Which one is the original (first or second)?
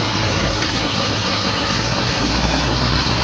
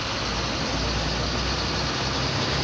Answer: second